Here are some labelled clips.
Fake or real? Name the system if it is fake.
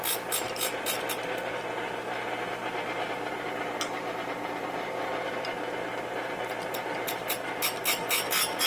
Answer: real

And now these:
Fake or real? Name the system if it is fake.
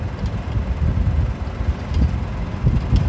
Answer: real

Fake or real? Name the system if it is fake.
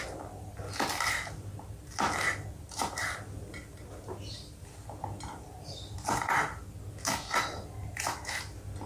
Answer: real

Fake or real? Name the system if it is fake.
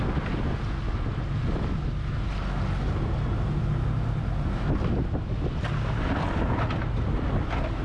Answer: real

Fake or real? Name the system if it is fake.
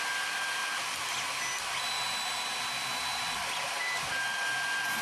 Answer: real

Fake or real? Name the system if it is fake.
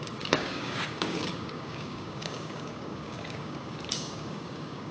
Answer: fake, codec, DAC